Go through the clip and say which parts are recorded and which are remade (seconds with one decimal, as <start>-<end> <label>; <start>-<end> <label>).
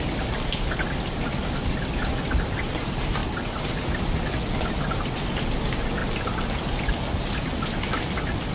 0.0-8.5 recorded